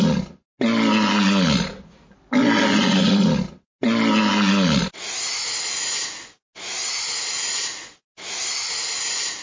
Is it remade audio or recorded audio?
recorded